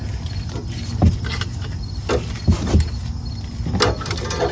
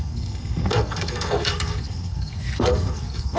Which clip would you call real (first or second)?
first